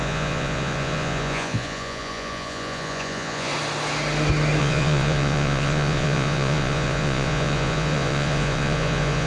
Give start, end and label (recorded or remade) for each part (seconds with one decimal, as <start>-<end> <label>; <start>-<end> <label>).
0.0-3.5 remade; 3.5-4.6 recorded; 4.6-9.3 remade